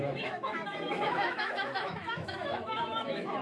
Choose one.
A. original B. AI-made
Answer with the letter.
B